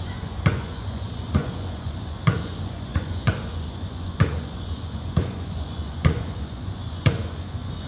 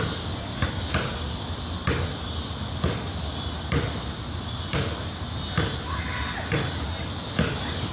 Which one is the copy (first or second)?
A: first